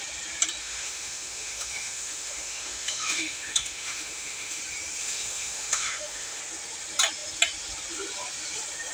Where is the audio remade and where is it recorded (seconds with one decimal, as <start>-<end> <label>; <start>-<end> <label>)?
0.0-0.6 recorded; 0.6-4.6 remade; 4.6-5.0 recorded; 5.0-6.4 remade; 6.4-8.9 recorded